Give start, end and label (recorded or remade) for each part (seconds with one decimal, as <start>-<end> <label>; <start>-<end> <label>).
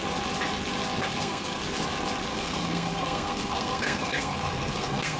0.0-1.0 recorded; 1.0-1.6 remade; 1.6-2.3 recorded; 2.3-5.2 remade